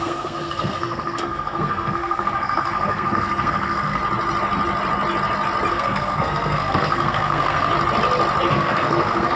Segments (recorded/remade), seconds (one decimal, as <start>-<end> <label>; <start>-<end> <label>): 0.0-4.0 remade; 4.0-5.7 recorded; 5.7-7.7 remade; 7.7-8.5 recorded; 8.5-9.4 remade